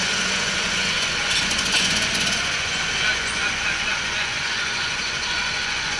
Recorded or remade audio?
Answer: remade